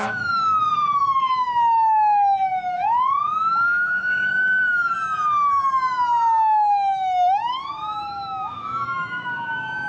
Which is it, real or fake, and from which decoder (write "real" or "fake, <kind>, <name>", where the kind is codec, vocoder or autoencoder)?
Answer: fake, autoencoder, DAC-VAE